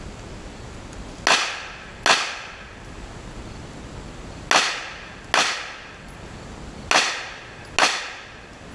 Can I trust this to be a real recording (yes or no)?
yes